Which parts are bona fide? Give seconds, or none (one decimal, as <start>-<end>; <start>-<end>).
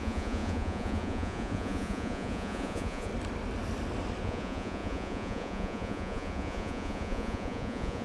3.1-4.2